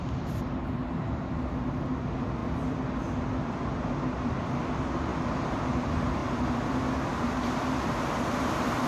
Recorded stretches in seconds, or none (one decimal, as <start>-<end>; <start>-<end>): 0.0-8.9